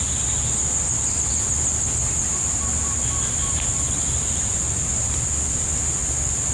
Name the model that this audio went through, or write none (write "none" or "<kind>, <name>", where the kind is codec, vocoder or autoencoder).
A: none